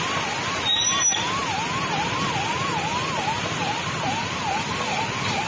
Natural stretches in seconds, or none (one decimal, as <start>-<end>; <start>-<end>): 0.0-5.5